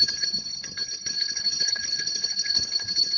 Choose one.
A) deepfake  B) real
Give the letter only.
A